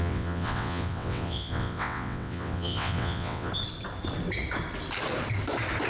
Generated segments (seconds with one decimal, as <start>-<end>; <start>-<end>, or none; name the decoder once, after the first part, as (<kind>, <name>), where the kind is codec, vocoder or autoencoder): 0.0-3.5 (vocoder, WaveNeXt)